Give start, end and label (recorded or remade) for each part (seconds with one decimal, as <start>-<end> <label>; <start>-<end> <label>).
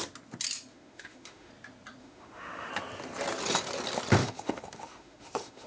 0.0-0.7 recorded; 0.7-1.5 remade; 1.5-2.0 recorded; 2.0-2.7 remade; 2.7-4.2 recorded; 4.2-5.7 remade